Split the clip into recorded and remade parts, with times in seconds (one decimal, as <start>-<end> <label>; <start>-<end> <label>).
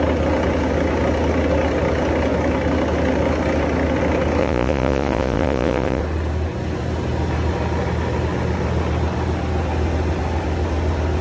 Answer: 0.0-4.4 recorded; 4.4-6.0 remade; 6.0-11.2 recorded